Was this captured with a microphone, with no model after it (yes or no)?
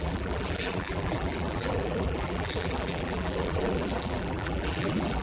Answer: no